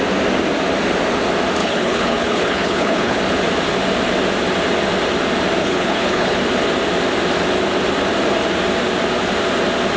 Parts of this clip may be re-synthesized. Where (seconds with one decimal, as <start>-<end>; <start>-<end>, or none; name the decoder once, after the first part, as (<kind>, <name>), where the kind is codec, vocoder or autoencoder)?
1.6-3.2 (codec, HILCodec); 5.6-6.4